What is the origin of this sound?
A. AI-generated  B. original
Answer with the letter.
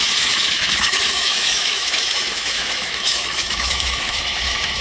A